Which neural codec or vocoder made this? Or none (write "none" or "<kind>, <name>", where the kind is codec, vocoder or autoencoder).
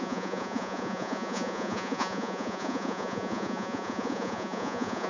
vocoder, Vocos